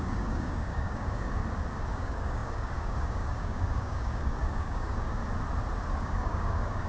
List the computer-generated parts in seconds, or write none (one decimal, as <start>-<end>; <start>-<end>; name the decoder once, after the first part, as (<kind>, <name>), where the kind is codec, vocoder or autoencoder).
0.0-1.4 (codec, DAC); 1.9-5.2; 6.0-6.9